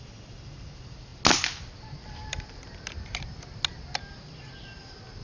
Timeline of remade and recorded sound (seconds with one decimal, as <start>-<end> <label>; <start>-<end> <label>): 0.0-5.2 recorded